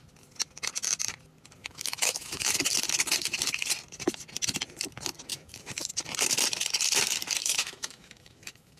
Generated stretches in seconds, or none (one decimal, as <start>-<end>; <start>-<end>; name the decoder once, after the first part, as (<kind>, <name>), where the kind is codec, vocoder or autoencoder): 1.6-2.5 (autoencoder, DAC-VAE); 5.3-5.9; 7.4-8.8

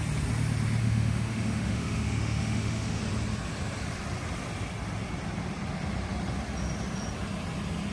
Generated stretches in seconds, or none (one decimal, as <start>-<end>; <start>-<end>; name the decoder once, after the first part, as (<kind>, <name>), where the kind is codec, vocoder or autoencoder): 0.8-3.0 (autoencoder, DAC-VAE)

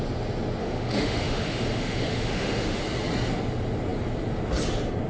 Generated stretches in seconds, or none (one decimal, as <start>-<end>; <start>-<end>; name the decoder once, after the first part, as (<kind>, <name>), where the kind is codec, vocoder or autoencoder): 0.6-2.8 (autoencoder, DAC-VAE)

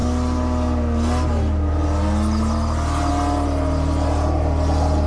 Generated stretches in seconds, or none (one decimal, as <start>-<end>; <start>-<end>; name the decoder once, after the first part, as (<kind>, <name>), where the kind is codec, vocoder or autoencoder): none

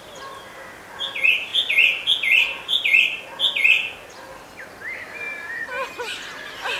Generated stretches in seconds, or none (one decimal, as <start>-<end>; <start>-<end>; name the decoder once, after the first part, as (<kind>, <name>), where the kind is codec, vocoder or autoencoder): none

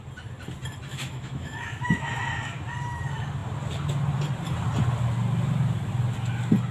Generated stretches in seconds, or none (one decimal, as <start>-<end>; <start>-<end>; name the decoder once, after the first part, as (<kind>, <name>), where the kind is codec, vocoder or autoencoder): 0.9-2.2 (autoencoder, DAC-VAE)

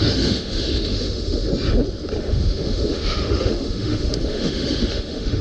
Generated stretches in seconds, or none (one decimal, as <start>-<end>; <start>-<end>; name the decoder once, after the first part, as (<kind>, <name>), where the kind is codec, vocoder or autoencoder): 0.0-1.5 (autoencoder, DAC-VAE); 2.2-5.4